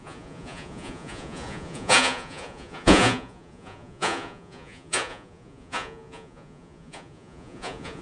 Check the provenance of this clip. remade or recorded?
remade